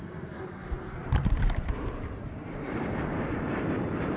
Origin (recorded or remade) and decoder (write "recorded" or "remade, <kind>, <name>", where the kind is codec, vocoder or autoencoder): remade, vocoder, BigVGAN v2